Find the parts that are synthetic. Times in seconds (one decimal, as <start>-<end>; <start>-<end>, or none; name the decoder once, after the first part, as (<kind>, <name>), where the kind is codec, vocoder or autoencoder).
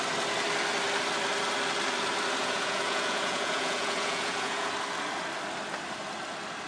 2.4-4.7 (vocoder, Vocos)